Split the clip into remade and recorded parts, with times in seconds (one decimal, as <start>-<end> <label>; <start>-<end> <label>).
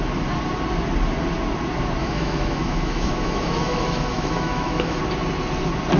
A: 0.0-2.0 recorded; 2.0-5.0 remade; 5.0-6.0 recorded